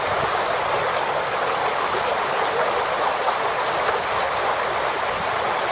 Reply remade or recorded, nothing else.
recorded